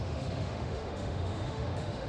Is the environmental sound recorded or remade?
remade